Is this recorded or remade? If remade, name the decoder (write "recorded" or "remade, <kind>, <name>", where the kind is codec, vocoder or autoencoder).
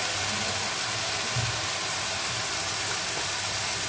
recorded